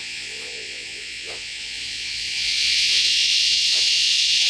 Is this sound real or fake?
fake